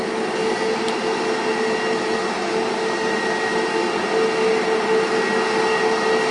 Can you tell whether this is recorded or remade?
recorded